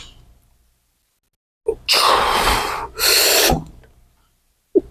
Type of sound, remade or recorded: recorded